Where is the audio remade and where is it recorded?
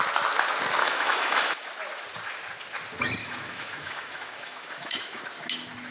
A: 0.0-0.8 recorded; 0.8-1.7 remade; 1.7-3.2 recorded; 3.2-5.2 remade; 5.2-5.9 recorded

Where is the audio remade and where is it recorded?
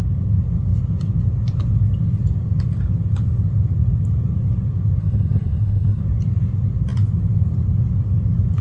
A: 0.0-5.0 recorded; 5.0-6.0 remade; 6.0-8.6 recorded